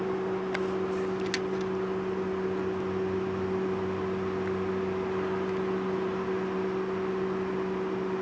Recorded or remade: recorded